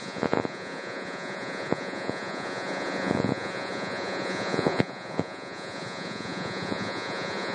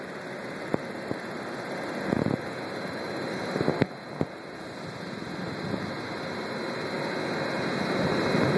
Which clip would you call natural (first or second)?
second